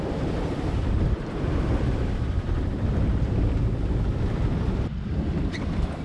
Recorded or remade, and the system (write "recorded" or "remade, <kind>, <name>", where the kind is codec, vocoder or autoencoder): remade, vocoder, BigVGAN v2